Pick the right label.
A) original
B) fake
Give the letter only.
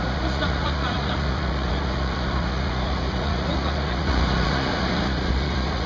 B